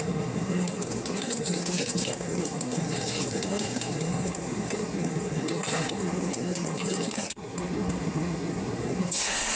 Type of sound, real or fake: fake